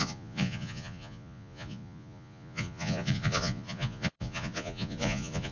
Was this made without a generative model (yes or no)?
no